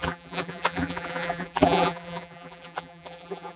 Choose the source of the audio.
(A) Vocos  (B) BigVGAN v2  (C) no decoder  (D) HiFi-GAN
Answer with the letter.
B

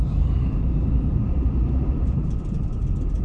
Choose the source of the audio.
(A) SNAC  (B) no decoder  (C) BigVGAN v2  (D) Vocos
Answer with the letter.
C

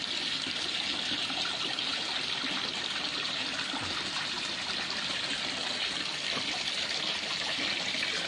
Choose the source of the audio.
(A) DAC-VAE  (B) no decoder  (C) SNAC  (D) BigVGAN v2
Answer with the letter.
D